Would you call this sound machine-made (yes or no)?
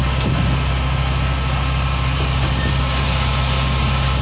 no